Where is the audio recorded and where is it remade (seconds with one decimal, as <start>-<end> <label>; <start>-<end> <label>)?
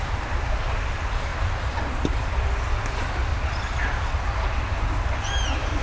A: 0.0-3.3 remade; 3.3-5.0 recorded; 5.0-5.8 remade